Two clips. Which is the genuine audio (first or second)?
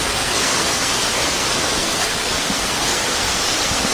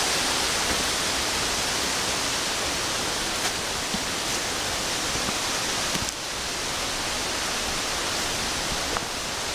second